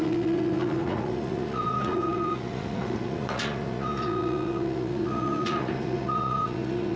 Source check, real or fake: fake